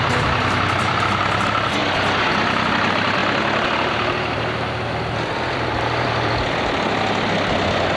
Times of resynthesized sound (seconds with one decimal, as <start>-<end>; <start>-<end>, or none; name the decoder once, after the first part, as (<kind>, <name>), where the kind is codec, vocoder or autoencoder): none